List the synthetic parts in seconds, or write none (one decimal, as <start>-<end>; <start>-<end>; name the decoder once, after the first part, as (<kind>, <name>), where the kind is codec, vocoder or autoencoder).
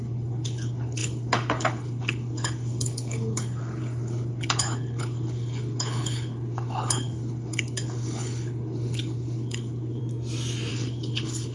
0.0-10.0 (codec, HILCodec); 10.7-11.5